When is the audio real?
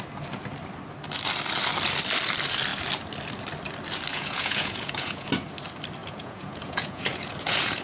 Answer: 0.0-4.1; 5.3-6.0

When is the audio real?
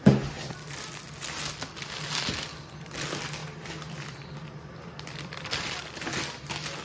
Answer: 0.0-3.4; 5.8-6.8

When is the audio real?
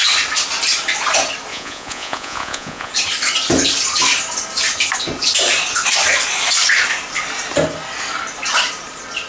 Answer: 0.0-1.5; 2.9-9.3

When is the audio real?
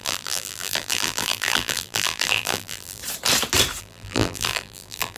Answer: 3.0-3.8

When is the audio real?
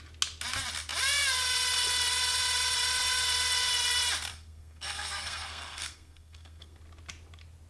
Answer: 0.0-4.3; 6.8-7.7